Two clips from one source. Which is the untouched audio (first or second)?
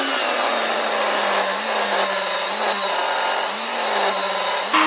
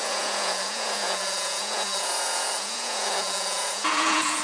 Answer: first